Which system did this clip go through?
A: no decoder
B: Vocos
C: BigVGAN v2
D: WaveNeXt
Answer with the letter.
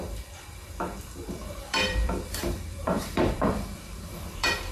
C